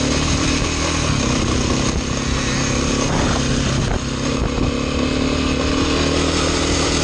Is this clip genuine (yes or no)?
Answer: yes